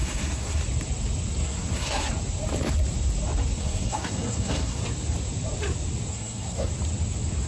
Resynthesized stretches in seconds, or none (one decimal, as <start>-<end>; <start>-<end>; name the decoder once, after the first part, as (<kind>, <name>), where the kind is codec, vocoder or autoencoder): 0.0-0.6 (codec, SNAC); 1.4-2.1; 3.6-4.8; 6.1-6.7